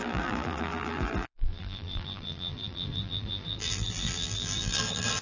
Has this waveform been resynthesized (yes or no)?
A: yes